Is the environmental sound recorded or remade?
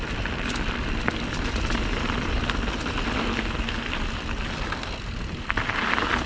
recorded